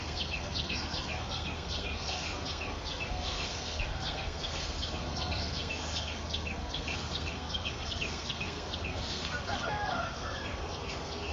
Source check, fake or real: fake